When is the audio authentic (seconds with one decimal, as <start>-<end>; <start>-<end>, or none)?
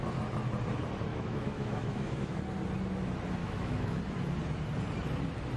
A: 0.0-1.1; 2.4-3.4; 4.0-5.6